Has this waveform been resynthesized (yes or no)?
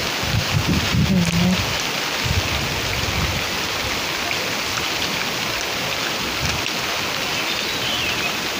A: no